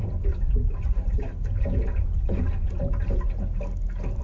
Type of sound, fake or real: real